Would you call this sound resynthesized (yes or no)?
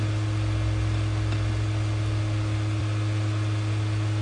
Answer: no